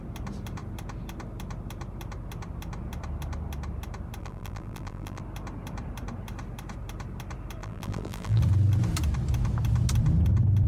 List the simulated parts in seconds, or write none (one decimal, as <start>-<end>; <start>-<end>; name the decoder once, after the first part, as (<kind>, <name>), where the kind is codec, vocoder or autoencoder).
4.2-5.2 (vocoder, BigVGAN v2); 7.6-8.4